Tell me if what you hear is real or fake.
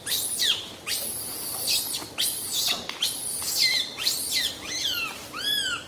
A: real